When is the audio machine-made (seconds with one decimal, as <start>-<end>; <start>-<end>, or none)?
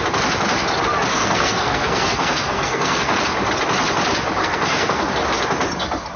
1.1-3.2; 4.4-5.0